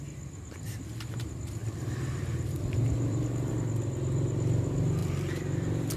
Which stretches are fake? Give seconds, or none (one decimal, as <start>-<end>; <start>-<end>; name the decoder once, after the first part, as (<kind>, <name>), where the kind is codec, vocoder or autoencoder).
1.6-3.5 (vocoder, BigVGAN v2); 5.0-6.0